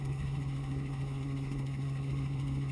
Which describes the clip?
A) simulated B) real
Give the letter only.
A